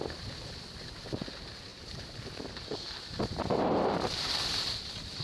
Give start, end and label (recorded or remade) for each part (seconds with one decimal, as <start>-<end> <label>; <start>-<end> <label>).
0.0-0.8 recorded; 0.8-5.2 remade